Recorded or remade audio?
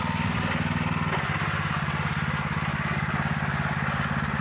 recorded